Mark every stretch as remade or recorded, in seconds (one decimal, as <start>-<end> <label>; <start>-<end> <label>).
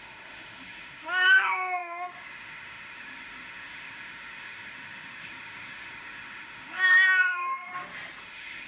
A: 0.0-7.7 remade; 7.7-8.2 recorded; 8.2-8.7 remade